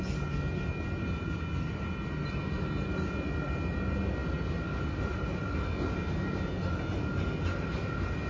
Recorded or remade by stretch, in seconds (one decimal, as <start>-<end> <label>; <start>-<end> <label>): 0.0-8.3 recorded